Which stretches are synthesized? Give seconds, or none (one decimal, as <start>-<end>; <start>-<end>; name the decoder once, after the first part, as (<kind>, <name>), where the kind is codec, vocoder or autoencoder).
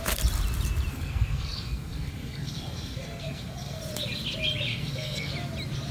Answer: 0.9-3.8 (codec, SNAC); 4.7-5.3